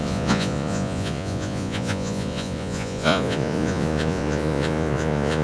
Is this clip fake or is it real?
fake